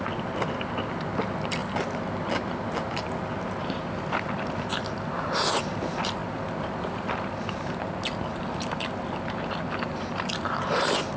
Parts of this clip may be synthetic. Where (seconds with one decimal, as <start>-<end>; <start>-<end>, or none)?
none